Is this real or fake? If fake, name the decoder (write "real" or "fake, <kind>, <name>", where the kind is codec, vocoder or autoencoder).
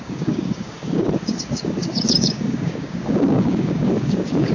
fake, codec, DAC